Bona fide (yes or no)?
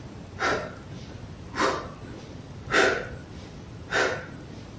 yes